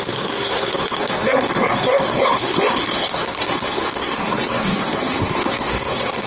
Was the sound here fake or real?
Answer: fake